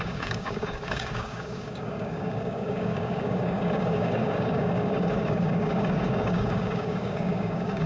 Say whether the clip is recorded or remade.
remade